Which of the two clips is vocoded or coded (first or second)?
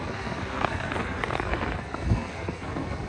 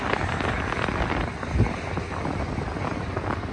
first